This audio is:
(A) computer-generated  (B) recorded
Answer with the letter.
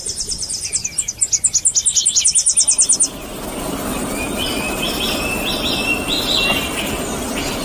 B